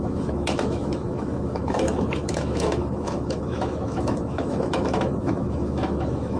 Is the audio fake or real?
fake